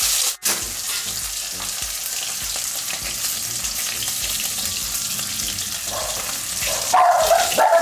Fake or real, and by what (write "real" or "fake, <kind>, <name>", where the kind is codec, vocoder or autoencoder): real